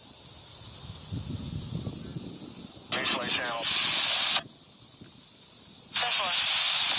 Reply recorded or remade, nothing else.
recorded